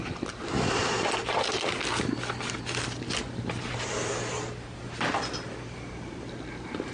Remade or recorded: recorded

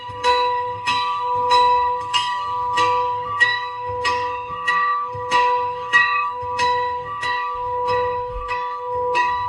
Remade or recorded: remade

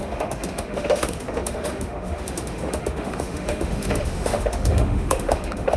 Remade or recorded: remade